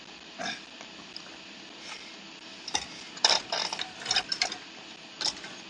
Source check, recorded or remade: recorded